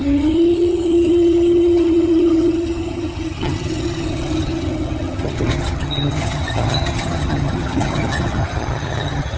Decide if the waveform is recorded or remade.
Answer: remade